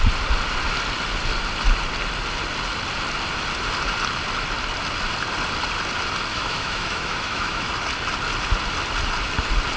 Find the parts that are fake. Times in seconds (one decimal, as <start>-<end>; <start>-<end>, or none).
6.3-7.7